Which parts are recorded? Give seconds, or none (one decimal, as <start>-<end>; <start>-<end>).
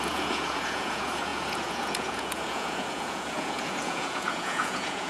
none